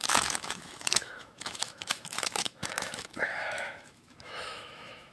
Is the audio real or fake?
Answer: fake